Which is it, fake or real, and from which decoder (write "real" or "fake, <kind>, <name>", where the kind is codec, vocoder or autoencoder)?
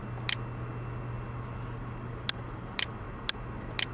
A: real